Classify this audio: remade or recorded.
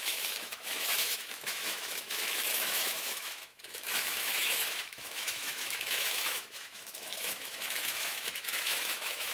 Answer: remade